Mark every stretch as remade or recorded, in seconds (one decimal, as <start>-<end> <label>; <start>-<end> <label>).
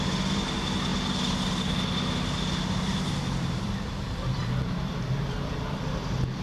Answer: 0.0-6.4 recorded